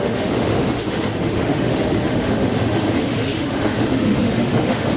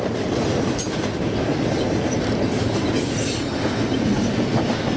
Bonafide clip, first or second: second